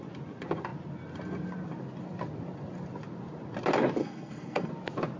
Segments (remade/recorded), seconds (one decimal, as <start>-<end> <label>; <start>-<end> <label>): 0.0-4.0 recorded; 4.0-4.7 remade; 4.7-5.2 recorded